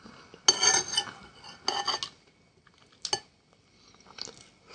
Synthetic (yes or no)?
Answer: no